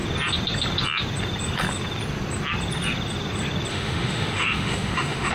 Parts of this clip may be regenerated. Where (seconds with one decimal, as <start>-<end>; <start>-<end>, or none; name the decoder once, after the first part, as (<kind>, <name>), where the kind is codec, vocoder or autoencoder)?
3.7-5.3 (autoencoder, DAC-VAE)